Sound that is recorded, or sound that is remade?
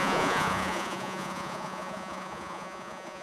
remade